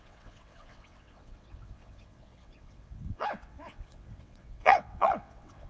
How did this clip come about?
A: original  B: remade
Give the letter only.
B